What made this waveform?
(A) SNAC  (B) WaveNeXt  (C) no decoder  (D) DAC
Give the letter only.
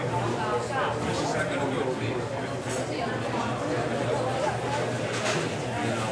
C